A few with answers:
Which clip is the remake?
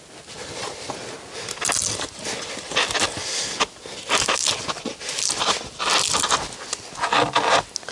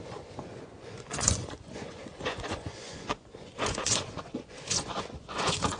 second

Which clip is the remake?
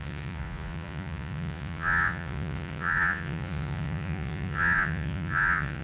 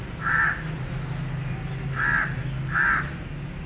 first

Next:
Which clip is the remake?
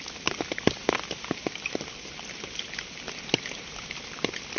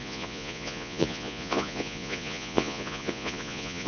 second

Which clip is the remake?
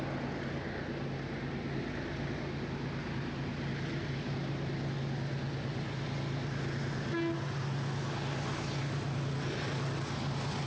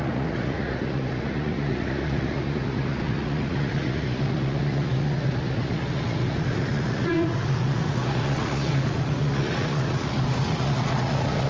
second